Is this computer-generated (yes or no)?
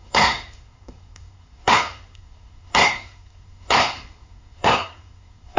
yes